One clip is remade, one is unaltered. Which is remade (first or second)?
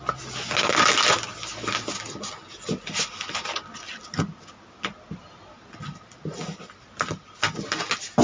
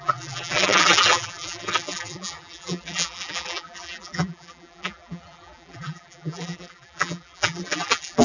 second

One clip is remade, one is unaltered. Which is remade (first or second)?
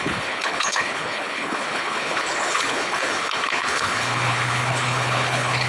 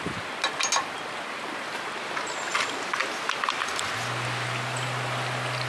first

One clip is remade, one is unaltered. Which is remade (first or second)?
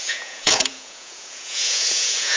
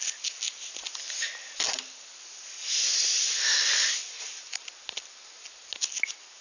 first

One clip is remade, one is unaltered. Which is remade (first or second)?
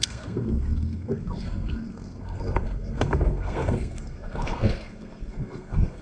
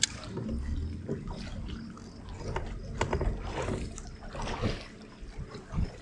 first